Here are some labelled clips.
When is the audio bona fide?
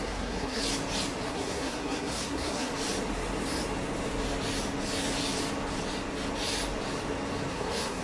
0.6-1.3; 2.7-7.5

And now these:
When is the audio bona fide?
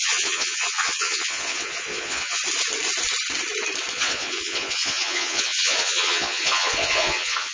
2.4-3.9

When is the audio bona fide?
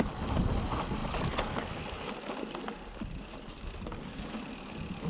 0.0-5.1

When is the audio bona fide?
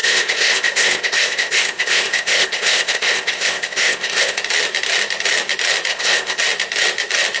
4.4-5.9; 6.4-7.4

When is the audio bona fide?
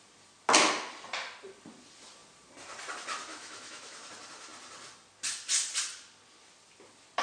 0.0-3.3; 4.1-7.2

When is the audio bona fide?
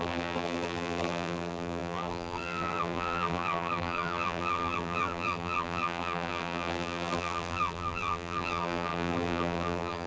none